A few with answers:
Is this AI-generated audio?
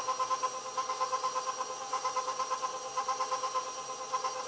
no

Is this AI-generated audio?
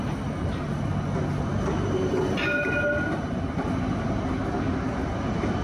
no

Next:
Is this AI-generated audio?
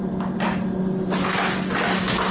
no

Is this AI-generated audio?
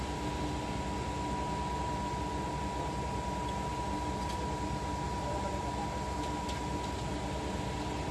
no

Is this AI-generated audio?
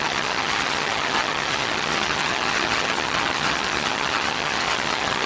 yes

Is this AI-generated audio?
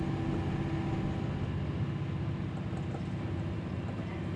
no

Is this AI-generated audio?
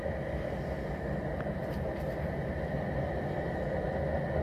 no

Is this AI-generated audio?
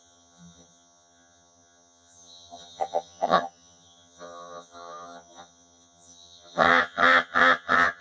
yes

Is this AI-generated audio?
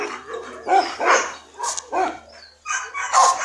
no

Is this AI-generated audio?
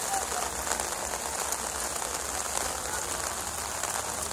no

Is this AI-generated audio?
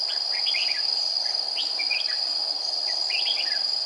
no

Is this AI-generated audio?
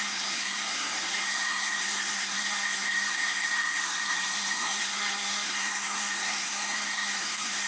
yes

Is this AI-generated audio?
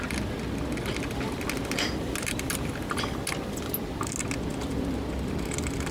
no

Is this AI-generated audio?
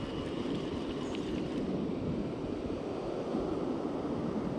yes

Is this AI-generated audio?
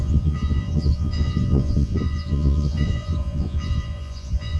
yes